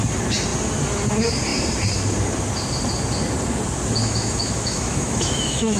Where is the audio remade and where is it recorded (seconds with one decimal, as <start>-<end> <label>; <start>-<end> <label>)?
0.0-4.0 recorded; 4.0-5.8 remade